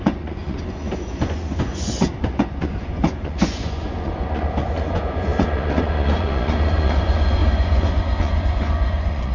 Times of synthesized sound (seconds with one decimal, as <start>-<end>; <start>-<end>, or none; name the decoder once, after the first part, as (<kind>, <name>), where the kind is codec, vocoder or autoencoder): 0.0-9.3 (vocoder, Vocos)